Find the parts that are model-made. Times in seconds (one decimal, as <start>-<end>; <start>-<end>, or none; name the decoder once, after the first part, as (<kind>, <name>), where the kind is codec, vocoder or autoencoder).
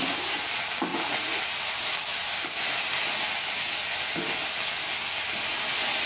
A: 0.9-1.4 (vocoder, Vocos)